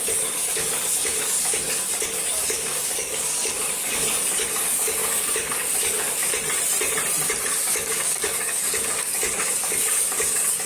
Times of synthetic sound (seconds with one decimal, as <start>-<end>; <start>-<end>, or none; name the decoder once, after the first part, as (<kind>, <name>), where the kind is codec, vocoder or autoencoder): 0.0-6.3 (codec, DAC); 7.5-10.7